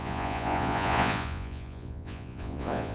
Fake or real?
fake